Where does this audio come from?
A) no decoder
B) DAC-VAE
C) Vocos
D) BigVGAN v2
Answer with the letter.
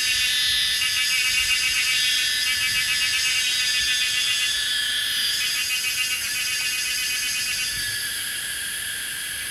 D